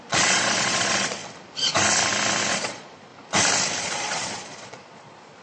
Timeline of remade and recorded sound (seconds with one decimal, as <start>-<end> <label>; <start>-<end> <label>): 0.0-1.2 remade; 1.2-2.5 recorded; 2.5-3.1 remade; 3.1-3.8 recorded; 3.8-5.4 remade